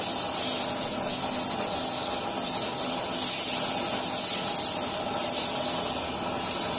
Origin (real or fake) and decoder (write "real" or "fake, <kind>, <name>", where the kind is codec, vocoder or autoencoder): real